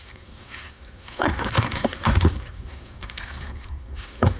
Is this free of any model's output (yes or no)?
no